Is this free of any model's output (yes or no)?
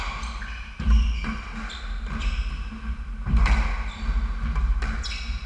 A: yes